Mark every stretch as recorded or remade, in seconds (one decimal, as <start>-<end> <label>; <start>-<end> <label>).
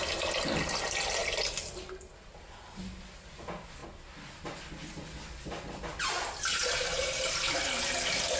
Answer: 0.0-8.4 recorded